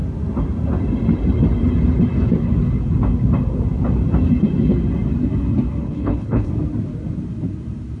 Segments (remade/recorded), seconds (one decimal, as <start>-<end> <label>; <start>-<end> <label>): 0.0-5.8 recorded; 5.8-6.5 remade; 6.5-8.0 recorded